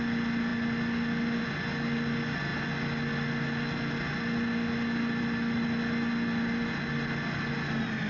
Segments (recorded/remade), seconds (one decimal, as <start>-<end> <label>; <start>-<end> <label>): 0.0-8.1 recorded